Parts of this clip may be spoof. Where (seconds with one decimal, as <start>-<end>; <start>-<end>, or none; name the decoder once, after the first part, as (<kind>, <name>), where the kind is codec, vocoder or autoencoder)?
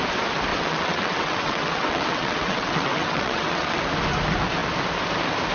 0.5-3.8 (vocoder, WaveNeXt)